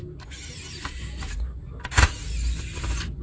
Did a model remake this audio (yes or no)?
no